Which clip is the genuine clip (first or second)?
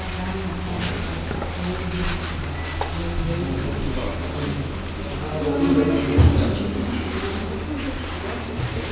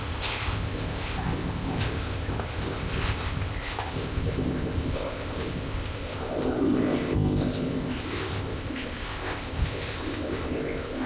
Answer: first